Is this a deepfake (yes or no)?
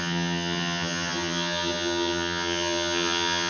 yes